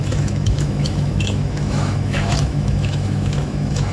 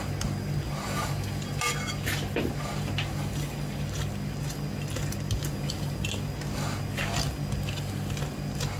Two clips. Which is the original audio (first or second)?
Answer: second